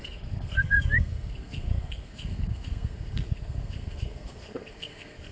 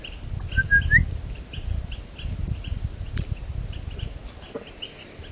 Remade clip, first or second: first